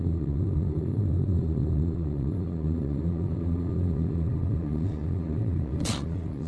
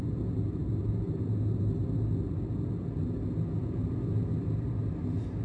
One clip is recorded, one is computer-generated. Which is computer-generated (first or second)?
first